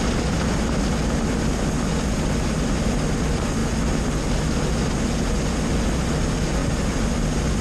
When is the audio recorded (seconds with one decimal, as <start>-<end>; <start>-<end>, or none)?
0.0-7.6